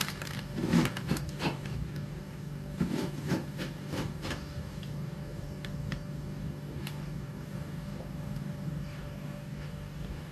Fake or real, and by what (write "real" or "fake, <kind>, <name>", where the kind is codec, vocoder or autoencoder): fake, codec, DAC